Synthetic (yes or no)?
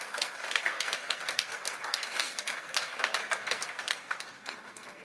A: yes